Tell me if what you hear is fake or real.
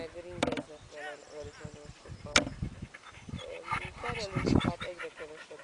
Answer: real